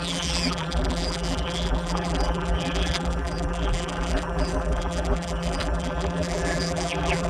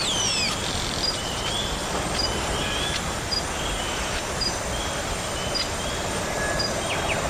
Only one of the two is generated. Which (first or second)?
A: first